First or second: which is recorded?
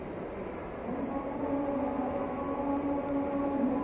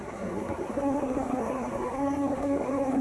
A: first